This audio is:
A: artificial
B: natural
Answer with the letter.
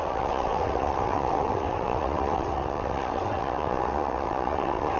A